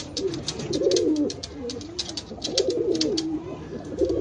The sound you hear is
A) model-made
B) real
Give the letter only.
B